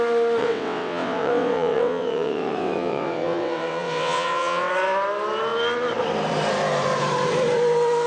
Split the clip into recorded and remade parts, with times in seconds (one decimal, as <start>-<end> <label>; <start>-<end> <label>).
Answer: 0.0-0.4 recorded; 0.4-4.7 remade; 4.7-8.1 recorded